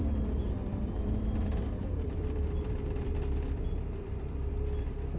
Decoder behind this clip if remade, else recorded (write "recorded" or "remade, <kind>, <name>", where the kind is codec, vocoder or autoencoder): remade, vocoder, BigVGAN v2